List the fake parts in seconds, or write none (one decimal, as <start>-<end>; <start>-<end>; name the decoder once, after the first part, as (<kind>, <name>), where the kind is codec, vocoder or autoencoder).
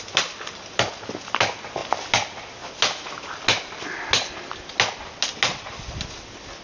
none